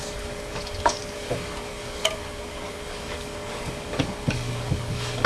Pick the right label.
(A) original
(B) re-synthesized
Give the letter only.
B